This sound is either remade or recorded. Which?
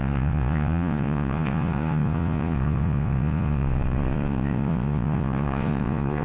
remade